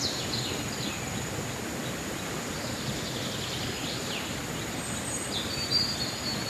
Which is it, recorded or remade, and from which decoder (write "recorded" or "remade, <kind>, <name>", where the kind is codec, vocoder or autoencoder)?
recorded